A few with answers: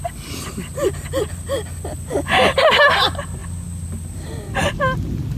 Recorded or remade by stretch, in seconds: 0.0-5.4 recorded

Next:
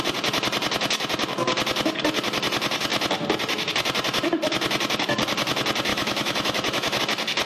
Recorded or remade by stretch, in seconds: 0.0-5.9 recorded; 5.9-7.0 remade; 7.0-7.5 recorded

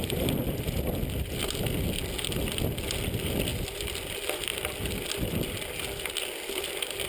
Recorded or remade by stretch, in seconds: 0.0-7.1 recorded

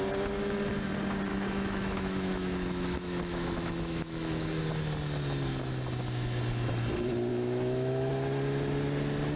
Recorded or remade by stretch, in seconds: 0.0-1.3 recorded; 1.3-4.6 remade; 4.6-7.3 recorded; 7.3-8.1 remade; 8.1-9.4 recorded

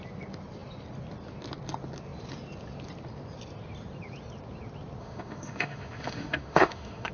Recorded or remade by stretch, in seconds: 0.0-5.0 recorded; 5.0-7.1 remade

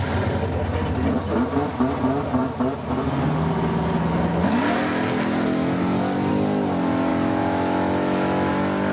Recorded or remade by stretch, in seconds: 0.0-7.1 recorded; 7.1-8.5 remade; 8.5-8.9 recorded

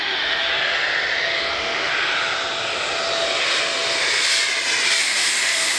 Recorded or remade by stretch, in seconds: 0.0-0.5 remade; 0.5-1.5 recorded; 1.5-1.9 remade; 1.9-5.0 recorded; 5.0-5.8 remade